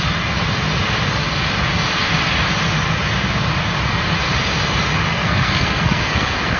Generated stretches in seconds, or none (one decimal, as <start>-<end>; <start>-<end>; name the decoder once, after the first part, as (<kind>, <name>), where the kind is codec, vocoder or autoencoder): 5.1-6.6 (codec, SNAC)